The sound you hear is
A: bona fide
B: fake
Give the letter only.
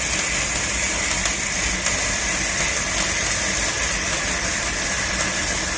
A